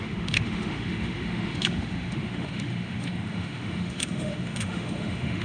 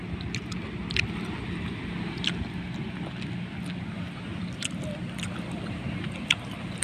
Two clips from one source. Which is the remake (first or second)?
first